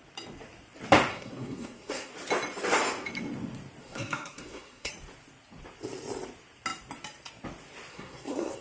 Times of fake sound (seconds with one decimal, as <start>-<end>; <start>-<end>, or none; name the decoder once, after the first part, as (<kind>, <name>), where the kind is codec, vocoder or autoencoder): 1.1-2.1 (codec, SNAC); 3.8-4.9; 7.9-8.6

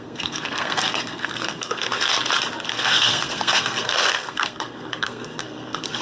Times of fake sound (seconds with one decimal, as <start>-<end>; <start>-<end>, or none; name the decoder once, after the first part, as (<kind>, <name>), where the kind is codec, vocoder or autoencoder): 0.0-2.1 (codec, SNAC); 2.7-6.0

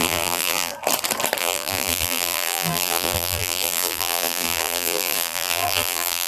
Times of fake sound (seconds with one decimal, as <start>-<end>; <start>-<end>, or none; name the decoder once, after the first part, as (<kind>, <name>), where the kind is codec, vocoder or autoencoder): 0.0-0.7 (vocoder, BigVGAN v2); 1.4-6.3

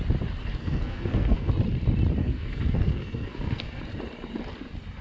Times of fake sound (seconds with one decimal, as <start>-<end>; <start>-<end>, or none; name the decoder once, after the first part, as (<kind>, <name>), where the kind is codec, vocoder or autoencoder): 0.6-1.5 (codec, SNAC); 2.2-3.8

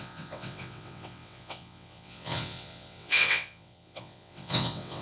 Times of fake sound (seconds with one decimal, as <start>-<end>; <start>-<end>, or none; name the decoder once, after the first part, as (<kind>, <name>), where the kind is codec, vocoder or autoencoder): 0.0-5.0 (vocoder, WaveNeXt)